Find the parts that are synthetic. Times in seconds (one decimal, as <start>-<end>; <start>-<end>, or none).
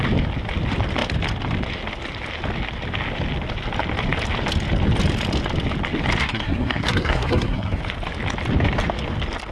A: 6.2-7.8